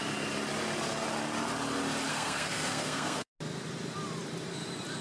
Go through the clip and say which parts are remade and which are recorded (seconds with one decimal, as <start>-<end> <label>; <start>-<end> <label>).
0.0-2.1 recorded; 2.1-3.3 remade; 3.3-5.0 recorded